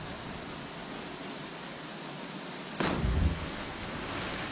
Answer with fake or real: real